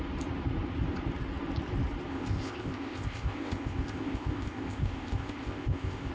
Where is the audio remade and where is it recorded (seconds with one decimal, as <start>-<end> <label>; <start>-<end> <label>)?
0.0-2.1 recorded; 2.1-6.1 remade